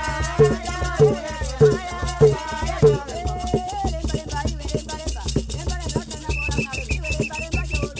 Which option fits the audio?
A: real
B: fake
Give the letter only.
A